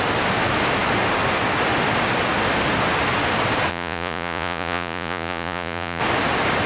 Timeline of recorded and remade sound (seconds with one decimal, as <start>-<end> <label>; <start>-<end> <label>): 0.0-3.7 recorded; 3.7-6.0 remade; 6.0-6.7 recorded